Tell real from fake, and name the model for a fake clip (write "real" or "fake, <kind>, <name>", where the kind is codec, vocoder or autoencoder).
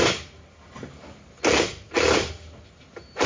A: real